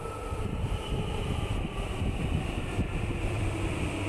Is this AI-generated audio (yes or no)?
yes